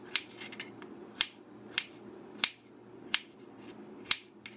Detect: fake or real real